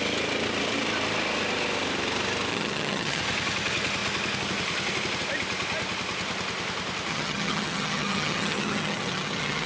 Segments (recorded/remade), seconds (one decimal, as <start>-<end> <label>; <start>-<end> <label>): 0.0-2.5 recorded; 2.5-3.2 remade; 3.2-7.1 recorded; 7.1-9.7 remade

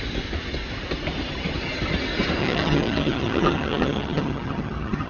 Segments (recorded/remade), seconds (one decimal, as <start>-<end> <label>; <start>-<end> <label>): 0.0-2.4 recorded; 2.4-5.1 remade

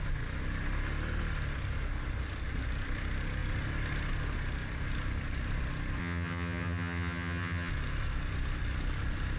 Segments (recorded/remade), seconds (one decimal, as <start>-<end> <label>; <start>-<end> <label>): 0.0-6.0 recorded; 6.0-7.7 remade; 7.7-9.4 recorded

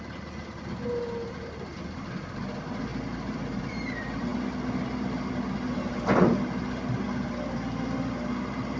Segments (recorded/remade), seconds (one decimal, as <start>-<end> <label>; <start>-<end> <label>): 0.0-8.8 recorded

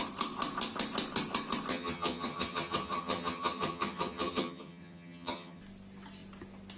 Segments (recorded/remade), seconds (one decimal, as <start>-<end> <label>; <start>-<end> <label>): 0.0-1.7 recorded; 1.7-5.6 remade; 5.6-6.8 recorded